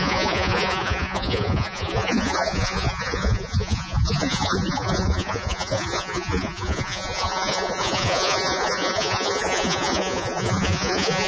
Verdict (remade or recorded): remade